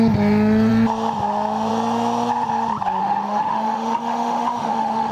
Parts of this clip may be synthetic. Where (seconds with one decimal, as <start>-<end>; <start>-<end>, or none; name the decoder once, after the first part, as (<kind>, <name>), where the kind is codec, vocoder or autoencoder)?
3.0-5.1 (autoencoder, DAC-VAE)